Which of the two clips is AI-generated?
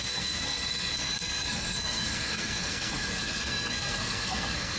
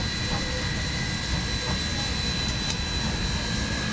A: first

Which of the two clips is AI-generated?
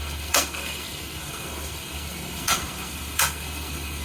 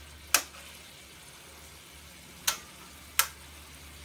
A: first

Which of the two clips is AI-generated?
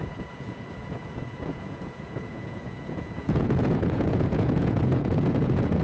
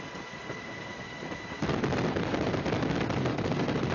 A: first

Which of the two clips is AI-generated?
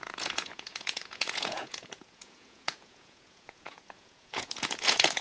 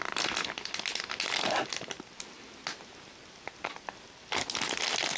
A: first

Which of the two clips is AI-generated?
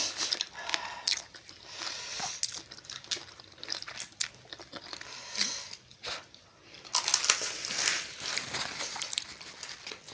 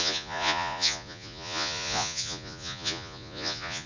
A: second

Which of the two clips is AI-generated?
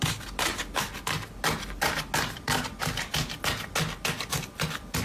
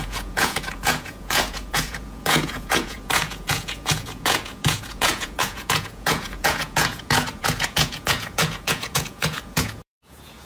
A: second